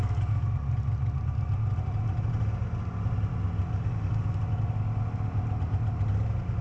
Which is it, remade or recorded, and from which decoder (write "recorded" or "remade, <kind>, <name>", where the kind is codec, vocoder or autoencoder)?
recorded